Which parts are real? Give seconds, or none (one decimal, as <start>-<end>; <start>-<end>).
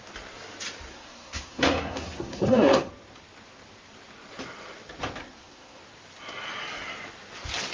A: 0.0-0.9; 2.9-5.2; 5.8-7.7